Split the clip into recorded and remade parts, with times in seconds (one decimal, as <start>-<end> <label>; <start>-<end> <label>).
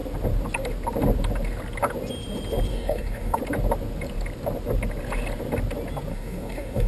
0.0-2.7 recorded; 2.7-3.4 remade; 3.4-6.1 recorded; 6.1-6.9 remade